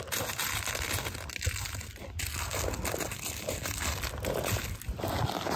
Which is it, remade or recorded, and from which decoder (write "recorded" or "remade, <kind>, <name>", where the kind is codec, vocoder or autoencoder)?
recorded